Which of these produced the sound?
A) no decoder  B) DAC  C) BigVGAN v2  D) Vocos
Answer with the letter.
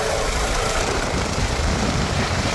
C